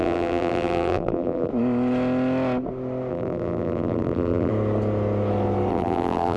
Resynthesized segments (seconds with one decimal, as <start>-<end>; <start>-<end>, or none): 0.0-1.5; 3.1-4.5; 5.7-6.4